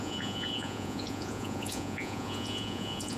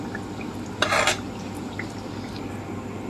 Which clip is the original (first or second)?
second